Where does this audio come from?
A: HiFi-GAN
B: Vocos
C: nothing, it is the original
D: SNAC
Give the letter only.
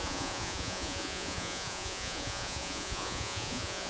B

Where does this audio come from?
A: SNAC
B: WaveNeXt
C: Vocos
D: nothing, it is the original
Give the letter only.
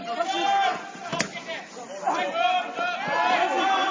D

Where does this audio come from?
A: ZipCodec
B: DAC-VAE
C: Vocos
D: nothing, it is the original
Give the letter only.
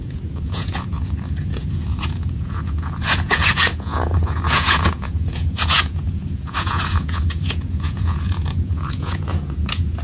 C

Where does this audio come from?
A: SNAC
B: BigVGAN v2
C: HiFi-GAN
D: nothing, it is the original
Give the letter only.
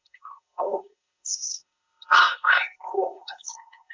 A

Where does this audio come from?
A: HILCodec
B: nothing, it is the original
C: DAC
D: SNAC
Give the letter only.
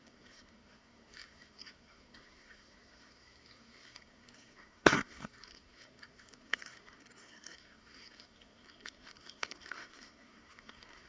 D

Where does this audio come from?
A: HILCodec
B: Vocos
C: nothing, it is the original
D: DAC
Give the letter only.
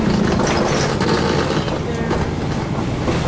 C